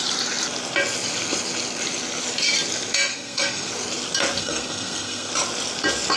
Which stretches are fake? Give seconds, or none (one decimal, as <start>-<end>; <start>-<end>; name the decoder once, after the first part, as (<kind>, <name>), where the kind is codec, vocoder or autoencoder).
3.1-3.7 (codec, SNAC); 4.4-5.3